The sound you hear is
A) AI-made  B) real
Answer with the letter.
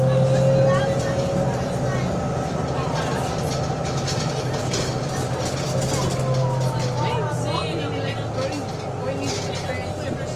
B